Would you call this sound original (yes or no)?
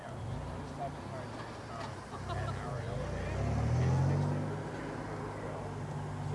yes